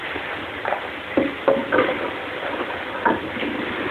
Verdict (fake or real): real